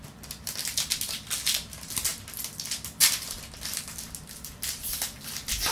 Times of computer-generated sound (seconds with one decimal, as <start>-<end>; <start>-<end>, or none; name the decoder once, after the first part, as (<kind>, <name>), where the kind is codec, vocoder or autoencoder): none